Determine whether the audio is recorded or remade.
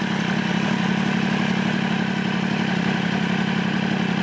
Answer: recorded